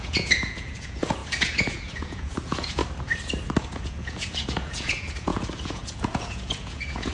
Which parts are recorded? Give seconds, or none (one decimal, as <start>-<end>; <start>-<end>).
2.8-3.6